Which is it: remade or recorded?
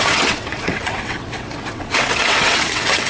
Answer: remade